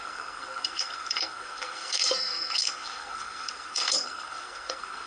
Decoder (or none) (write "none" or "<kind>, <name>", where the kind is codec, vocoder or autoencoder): codec, SNAC